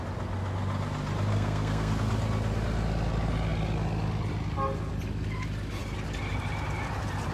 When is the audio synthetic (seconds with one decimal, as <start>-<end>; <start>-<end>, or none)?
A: 1.3-1.9